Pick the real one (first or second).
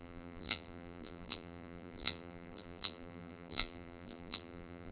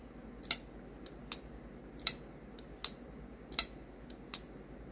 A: second